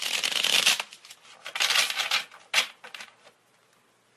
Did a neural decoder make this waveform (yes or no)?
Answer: no